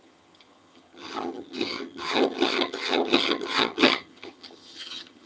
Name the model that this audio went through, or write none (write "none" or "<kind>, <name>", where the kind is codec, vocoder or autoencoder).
vocoder, HiFi-GAN